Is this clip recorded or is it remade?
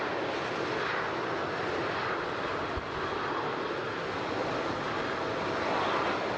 recorded